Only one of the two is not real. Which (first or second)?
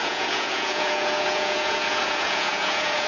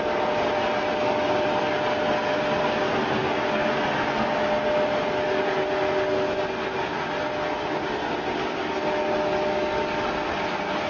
first